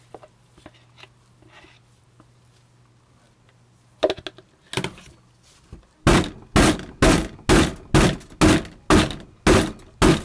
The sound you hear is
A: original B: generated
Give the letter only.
A